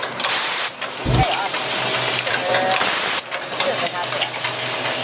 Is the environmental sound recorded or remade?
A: recorded